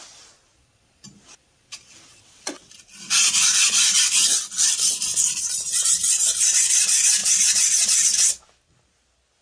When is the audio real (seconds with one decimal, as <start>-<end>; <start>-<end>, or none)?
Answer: 0.0-2.1; 2.7-9.4

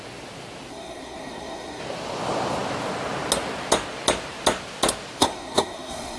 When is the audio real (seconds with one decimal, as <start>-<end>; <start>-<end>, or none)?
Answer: 0.0-0.7; 1.8-5.2

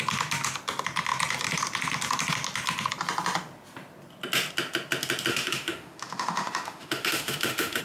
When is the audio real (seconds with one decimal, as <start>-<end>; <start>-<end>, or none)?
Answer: 0.0-5.3